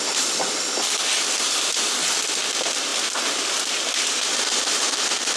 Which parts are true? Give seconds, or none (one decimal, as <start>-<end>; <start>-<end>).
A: none